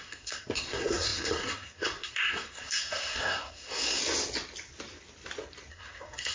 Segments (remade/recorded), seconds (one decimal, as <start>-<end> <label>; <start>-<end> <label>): 0.0-4.0 remade; 4.0-5.7 recorded; 5.7-6.3 remade